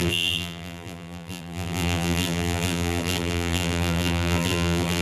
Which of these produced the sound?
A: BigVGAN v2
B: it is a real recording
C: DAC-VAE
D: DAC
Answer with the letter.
A